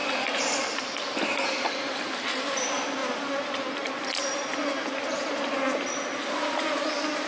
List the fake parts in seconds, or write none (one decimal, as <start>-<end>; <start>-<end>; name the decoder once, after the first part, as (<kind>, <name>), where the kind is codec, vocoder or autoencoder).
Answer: none